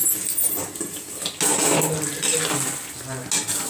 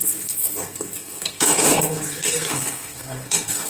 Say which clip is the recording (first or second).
first